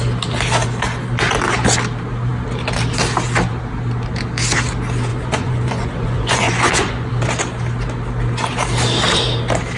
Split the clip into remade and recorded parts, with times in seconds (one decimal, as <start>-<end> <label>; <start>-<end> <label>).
0.0-5.1 recorded; 5.1-7.1 remade; 7.1-9.8 recorded